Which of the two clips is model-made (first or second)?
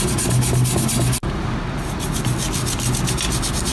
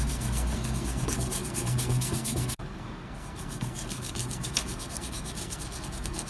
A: second